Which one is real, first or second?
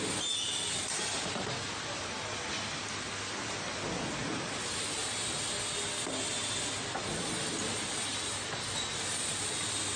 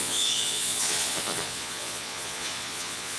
first